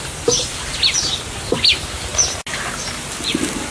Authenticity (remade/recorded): recorded